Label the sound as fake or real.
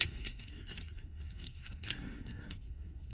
fake